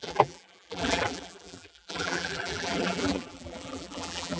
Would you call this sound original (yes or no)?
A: no